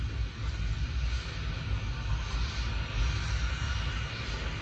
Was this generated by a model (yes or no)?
no